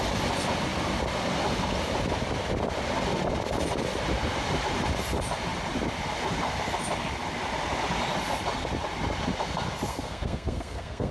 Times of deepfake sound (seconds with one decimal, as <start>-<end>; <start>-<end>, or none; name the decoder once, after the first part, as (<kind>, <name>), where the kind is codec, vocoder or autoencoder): 9.9-11.1 (codec, SNAC)